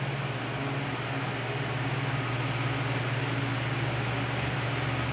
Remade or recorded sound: recorded